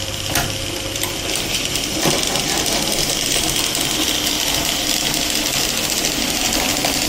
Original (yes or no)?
yes